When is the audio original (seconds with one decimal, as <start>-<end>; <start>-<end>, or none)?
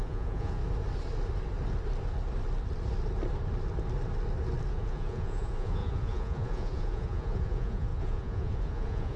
0.6-4.7